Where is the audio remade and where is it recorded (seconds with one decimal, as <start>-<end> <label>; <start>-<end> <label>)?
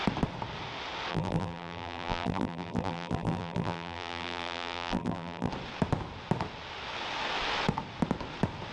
0.0-1.1 recorded; 1.1-5.5 remade; 5.5-8.7 recorded